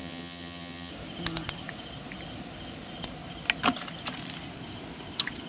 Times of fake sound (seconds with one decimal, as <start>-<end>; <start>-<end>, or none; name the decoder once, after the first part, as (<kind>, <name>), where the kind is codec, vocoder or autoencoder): 0.0-0.9 (vocoder, HiFi-GAN)